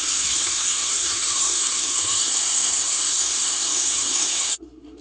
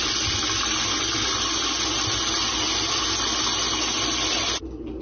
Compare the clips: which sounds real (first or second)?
second